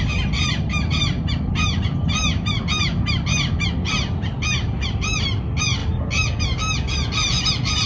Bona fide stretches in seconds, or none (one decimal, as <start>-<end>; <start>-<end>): 0.0-7.9